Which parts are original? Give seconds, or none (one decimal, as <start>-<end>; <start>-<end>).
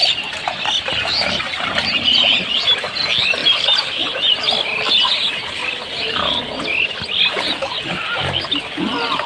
0.0-9.3